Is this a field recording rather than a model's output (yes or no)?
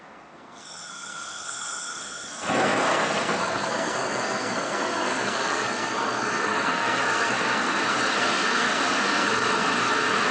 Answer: no